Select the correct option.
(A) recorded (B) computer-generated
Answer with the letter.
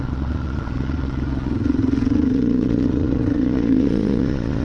B